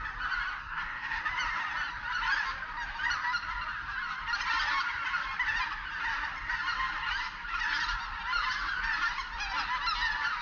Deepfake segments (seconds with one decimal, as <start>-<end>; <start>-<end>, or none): 0.6-1.2